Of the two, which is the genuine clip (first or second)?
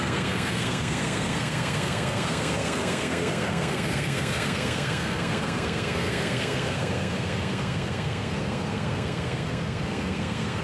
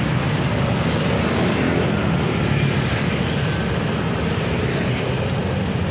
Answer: second